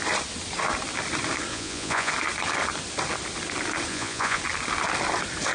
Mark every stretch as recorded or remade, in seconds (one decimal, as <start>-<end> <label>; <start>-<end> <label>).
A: 0.0-1.5 recorded; 1.5-2.1 remade; 2.1-3.9 recorded; 3.9-4.4 remade; 4.4-5.5 recorded